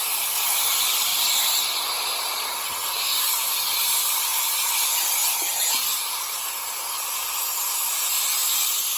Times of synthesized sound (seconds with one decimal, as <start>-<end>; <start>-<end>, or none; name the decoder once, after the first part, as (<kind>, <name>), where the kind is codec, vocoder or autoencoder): 5.2-6.8 (vocoder, BigVGAN v2)